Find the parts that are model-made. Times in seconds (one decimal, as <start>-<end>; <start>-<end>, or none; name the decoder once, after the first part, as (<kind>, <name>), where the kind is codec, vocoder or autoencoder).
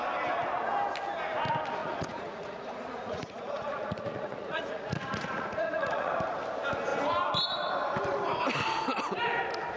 1.8-6.1 (vocoder, Vocos)